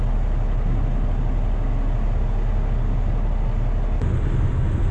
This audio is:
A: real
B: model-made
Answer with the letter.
A